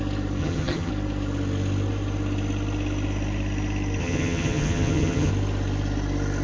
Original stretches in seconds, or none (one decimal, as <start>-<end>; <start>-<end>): 0.0-0.4; 0.9-4.0; 5.3-6.4